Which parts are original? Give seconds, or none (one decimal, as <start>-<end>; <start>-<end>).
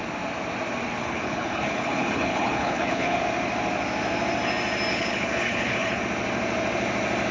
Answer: 0.0-1.0; 3.2-4.9; 6.0-7.3